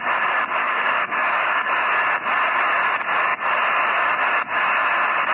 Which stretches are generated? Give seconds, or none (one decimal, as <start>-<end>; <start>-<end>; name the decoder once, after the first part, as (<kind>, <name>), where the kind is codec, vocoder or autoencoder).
0.6-1.7 (codec, DAC)